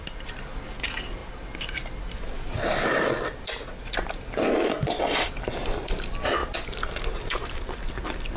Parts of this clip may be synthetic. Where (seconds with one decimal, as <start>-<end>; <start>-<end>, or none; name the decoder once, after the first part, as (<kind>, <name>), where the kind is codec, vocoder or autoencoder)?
none